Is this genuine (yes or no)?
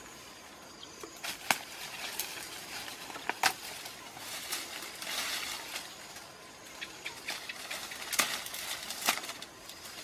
yes